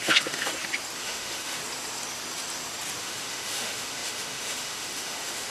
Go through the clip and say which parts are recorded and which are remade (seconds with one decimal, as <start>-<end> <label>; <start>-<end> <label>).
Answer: 0.0-0.5 remade; 0.5-1.0 recorded; 1.0-1.6 remade; 1.6-3.0 recorded; 3.0-5.5 remade